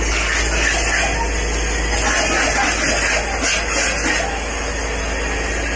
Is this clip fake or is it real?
real